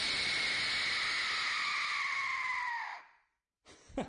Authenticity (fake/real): real